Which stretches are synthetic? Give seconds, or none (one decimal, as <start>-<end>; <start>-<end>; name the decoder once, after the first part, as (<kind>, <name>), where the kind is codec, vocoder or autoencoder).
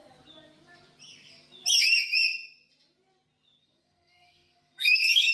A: 3.6-5.3 (codec, SNAC)